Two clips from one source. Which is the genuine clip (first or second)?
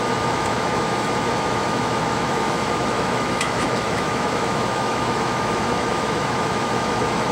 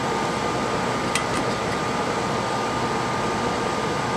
second